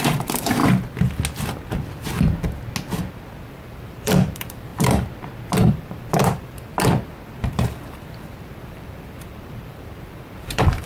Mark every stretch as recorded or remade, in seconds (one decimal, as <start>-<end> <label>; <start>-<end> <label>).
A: 0.0-0.6 remade; 0.6-3.5 recorded; 3.5-4.7 remade; 4.7-5.7 recorded; 5.7-6.7 remade; 6.7-7.5 recorded; 7.5-10.9 remade